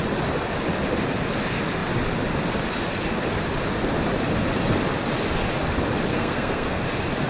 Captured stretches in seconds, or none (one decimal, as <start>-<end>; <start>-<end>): 0.0-6.1; 6.7-7.3